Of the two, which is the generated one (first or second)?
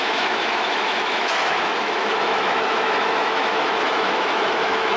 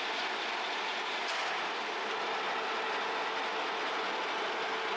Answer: first